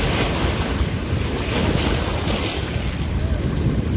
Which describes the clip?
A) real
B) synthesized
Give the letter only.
A